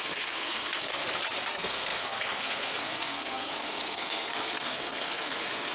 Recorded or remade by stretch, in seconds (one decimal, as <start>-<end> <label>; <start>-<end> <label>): 0.0-1.0 remade; 1.0-1.5 recorded; 1.5-5.7 remade